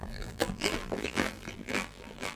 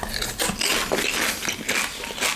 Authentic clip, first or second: second